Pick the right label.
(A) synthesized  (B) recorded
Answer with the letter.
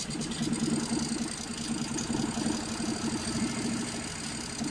B